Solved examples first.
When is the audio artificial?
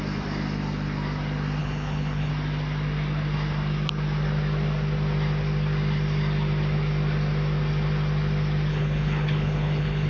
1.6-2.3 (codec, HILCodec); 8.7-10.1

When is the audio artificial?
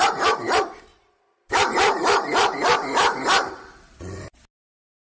0.9-4.0 (vocoder, BigVGAN v2)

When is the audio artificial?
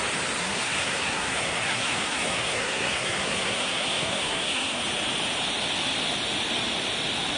0.4-4.8 (codec, SNAC)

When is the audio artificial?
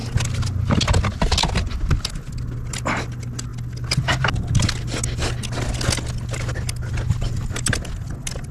none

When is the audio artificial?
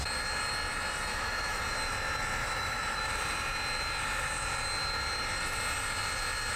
1.1-1.6 (autoencoder, DAC-VAE); 2.4-3.1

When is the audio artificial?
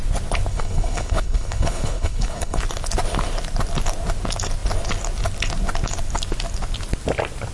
0.5-2.6 (codec, HILCodec)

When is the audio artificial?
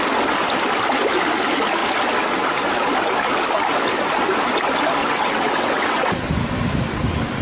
5.0-6.1 (vocoder, WaveNeXt)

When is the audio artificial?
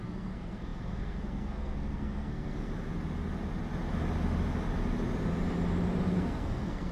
0.0-2.7 (codec, SNAC); 6.1-6.9